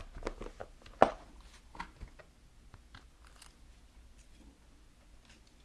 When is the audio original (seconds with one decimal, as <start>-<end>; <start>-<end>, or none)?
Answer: 0.0-5.6